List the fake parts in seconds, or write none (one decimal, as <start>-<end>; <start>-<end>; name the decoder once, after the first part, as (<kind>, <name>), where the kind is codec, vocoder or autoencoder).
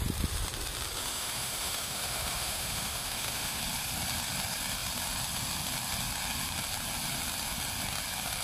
1.0-3.6 (autoencoder, DAC-VAE)